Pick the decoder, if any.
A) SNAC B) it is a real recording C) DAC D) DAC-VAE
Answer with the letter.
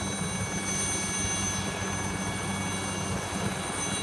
B